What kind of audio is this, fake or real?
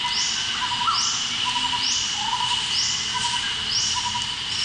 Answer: real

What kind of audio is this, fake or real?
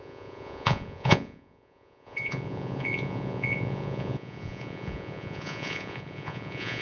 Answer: fake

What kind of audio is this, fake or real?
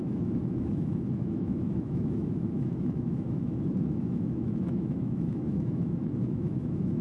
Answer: fake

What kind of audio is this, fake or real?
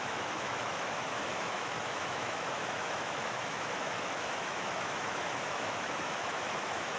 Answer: fake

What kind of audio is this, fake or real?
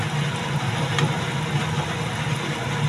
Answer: real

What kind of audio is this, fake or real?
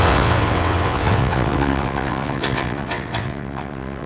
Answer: fake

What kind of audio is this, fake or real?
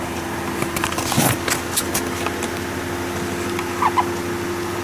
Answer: real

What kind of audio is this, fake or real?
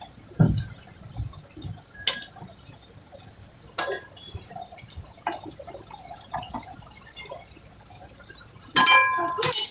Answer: real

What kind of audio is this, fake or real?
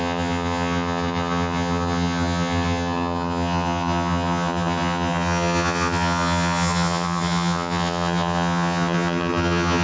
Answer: fake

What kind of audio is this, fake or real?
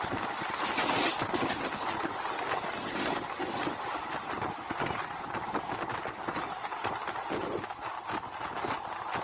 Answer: real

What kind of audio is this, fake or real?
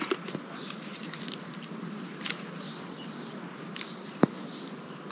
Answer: real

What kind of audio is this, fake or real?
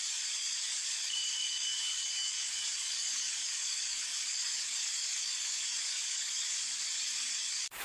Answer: fake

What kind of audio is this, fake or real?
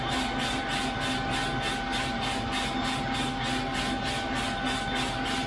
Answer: real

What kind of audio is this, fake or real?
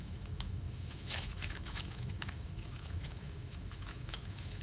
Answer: fake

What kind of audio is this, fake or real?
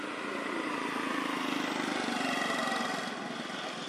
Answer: real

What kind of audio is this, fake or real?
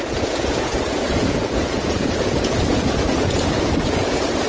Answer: fake